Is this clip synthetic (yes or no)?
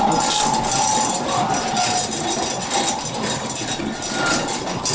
no